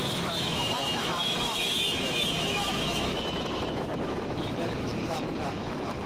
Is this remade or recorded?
remade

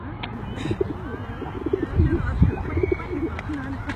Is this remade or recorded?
recorded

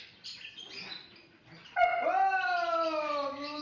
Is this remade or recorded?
recorded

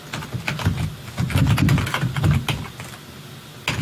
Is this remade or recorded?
recorded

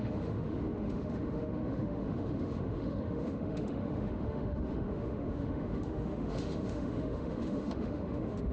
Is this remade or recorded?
remade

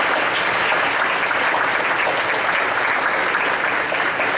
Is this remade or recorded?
recorded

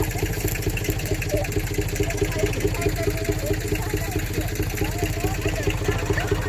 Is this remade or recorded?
recorded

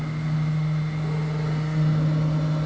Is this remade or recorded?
recorded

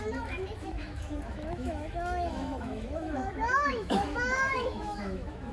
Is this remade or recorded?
remade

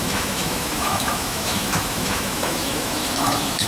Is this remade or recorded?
remade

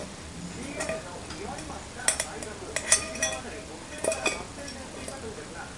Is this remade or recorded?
recorded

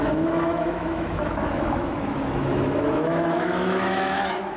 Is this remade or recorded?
remade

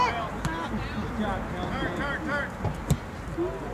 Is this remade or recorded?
recorded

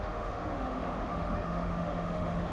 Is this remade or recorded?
remade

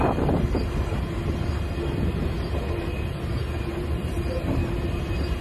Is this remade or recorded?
recorded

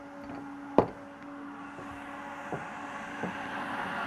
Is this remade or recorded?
recorded